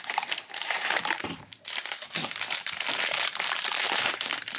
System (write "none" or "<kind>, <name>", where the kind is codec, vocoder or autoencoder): vocoder, BigVGAN v2